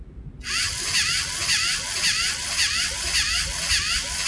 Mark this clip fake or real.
real